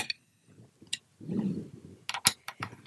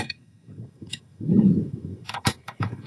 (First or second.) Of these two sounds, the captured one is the first